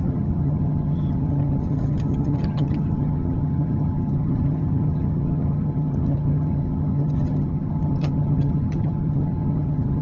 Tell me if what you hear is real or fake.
fake